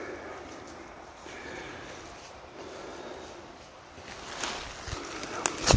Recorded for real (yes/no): yes